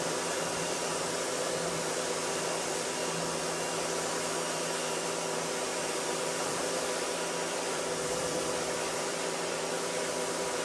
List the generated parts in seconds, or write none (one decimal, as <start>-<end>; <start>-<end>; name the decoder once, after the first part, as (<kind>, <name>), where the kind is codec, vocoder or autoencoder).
0.0-3.0 (vocoder, BigVGAN v2); 4.9-10.6